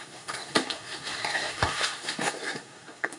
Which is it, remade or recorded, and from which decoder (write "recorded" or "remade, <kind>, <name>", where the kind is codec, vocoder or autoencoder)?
remade, codec, SNAC